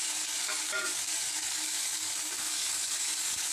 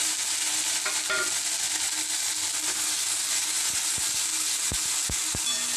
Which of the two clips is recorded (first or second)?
second